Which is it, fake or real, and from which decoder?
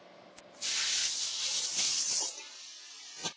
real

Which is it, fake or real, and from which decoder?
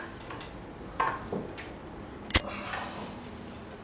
real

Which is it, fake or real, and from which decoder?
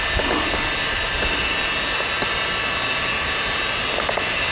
real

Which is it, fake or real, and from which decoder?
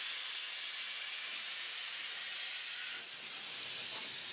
real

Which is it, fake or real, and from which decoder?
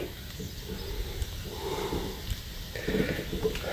real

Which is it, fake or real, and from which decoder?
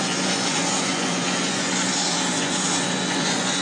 fake, vocoder, Vocos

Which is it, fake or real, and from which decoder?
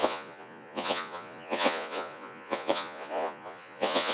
fake, vocoder, Vocos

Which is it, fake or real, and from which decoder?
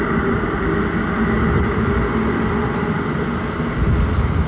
real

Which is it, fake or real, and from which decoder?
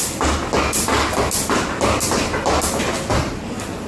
real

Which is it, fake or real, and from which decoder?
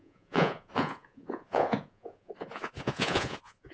fake, vocoder, Vocos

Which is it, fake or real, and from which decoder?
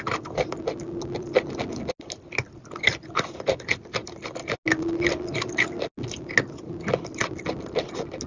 real